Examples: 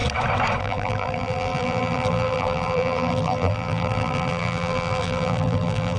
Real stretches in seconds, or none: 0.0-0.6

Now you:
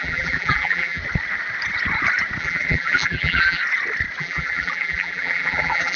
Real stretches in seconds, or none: 1.0-2.4; 3.6-4.2

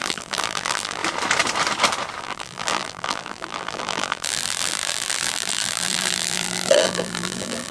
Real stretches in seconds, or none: 1.0-2.2

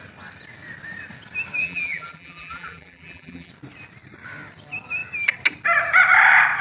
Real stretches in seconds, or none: 0.0-1.6; 3.5-6.6